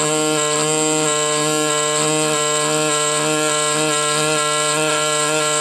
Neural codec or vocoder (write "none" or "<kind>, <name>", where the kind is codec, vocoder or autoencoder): none